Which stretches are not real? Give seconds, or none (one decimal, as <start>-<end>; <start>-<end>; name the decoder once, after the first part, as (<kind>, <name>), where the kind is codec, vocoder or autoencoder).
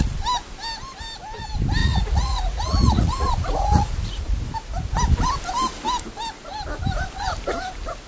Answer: 1.8-4.2 (vocoder, Vocos)